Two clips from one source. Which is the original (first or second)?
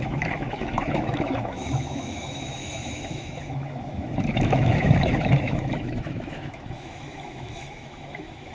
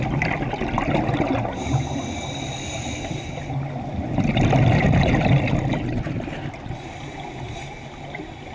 second